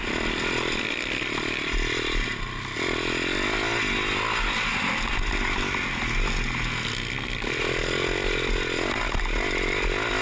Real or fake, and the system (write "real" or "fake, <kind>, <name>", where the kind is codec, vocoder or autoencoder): real